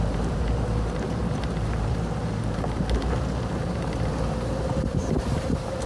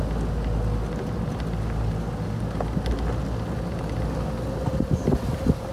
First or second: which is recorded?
second